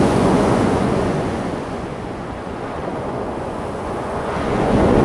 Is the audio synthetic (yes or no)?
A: yes